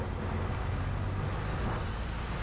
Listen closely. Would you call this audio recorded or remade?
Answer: recorded